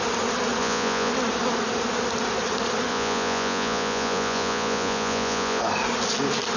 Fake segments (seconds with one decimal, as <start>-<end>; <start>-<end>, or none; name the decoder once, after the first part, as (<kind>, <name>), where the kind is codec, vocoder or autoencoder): 0.6-1.1 (vocoder, Vocos); 2.9-5.6